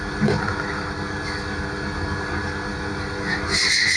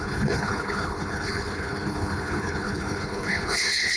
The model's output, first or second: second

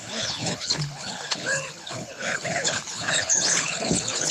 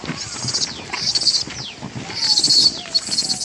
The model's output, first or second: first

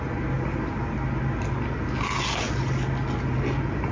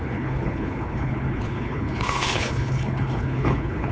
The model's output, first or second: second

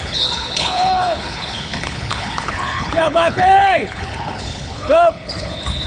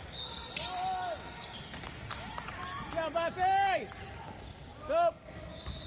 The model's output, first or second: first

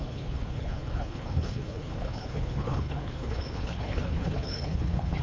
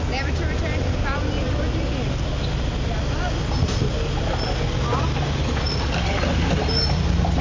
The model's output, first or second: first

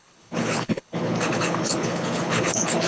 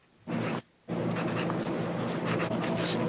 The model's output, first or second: first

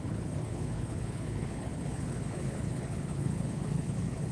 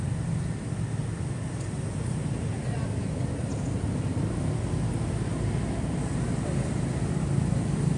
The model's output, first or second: first